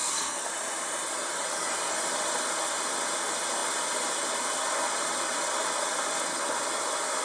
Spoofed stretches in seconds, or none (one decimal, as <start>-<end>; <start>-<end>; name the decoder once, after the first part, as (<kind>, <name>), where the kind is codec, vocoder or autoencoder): 0.0-0.5 (codec, SNAC)

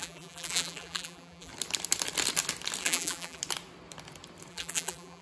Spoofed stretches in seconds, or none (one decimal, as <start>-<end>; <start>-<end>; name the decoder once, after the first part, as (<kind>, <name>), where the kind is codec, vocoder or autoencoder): 0.0-1.5 (vocoder, BigVGAN v2); 2.8-3.4; 4.5-5.2

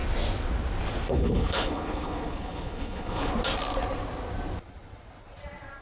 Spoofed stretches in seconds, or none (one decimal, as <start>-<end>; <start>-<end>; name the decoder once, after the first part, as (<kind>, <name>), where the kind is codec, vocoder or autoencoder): 1.1-3.3 (codec, HILCodec)

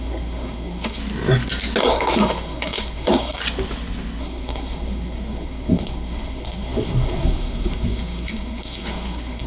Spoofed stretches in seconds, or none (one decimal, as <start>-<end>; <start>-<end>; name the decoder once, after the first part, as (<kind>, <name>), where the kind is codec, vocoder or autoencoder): 0.0-1.0 (codec, SNAC); 1.8-3.4; 4.2-9.5

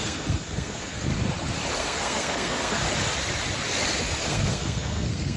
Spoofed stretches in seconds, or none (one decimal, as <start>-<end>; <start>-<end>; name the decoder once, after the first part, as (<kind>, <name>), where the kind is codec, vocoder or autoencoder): 0.0-1.1 (codec, SNAC); 1.8-2.8; 4.2-5.4

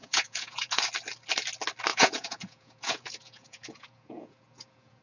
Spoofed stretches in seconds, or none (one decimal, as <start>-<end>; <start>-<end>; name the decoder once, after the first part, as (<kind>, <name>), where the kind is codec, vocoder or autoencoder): 0.0-0.8 (vocoder, Vocos); 1.9-5.0